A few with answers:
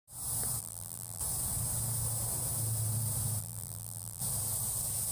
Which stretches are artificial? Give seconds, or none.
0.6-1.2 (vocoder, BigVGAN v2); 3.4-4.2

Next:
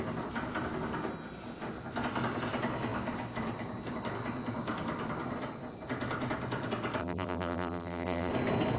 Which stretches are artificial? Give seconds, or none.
7.0-8.3 (vocoder, BigVGAN v2)

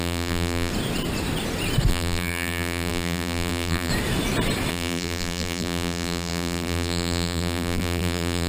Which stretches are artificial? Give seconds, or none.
0.0-0.7 (vocoder, BigVGAN v2); 1.9-3.9; 4.7-8.5

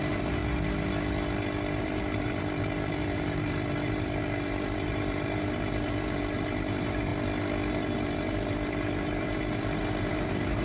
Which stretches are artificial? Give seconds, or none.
0.0-0.4 (vocoder, BigVGAN v2); 1.8-7.1; 7.7-10.6

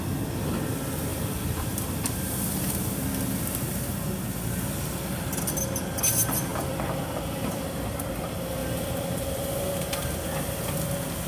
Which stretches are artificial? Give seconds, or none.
1.1-2.7 (vocoder, BigVGAN v2); 6.5-8.1; 8.6-9.8

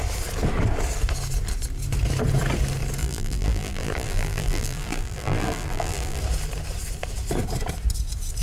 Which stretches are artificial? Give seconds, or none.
3.0-6.2 (vocoder, BigVGAN v2)